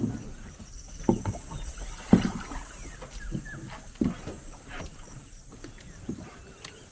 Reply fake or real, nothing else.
real